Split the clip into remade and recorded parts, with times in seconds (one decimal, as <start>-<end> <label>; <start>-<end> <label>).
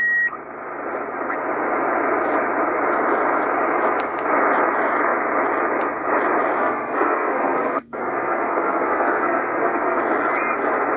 0.0-6.6 recorded; 6.6-10.0 remade; 10.0-11.0 recorded